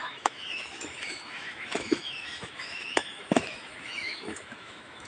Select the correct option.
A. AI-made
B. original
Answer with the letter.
A